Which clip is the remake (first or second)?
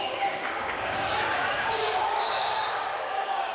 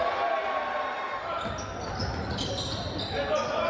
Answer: first